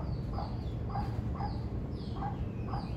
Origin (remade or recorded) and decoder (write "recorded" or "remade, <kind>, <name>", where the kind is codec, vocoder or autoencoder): recorded